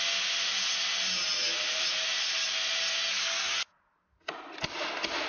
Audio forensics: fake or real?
real